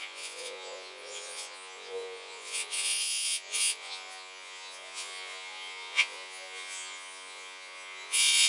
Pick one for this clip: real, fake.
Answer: fake